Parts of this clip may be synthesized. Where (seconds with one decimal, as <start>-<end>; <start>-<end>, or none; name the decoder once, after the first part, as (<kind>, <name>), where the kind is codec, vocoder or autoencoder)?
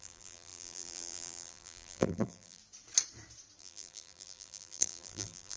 0.0-2.6 (vocoder, BigVGAN v2); 3.6-5.6